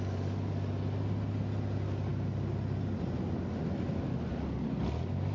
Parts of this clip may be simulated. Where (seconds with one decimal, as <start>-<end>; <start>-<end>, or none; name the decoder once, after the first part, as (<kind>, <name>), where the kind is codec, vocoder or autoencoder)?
none